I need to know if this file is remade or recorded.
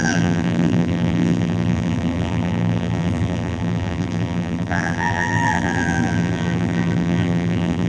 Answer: remade